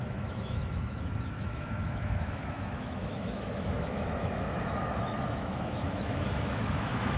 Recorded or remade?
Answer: remade